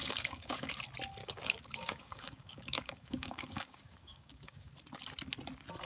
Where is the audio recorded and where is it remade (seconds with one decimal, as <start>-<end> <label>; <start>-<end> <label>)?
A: 0.0-0.7 remade; 0.7-1.2 recorded; 1.2-4.7 remade; 4.7-5.8 recorded